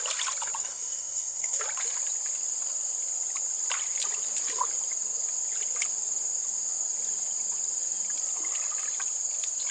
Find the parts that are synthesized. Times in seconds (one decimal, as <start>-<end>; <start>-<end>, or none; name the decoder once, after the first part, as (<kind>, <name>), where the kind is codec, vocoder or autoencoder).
0.6-1.6 (codec, SNAC)